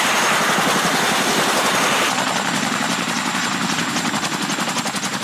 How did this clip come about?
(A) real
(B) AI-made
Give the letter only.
A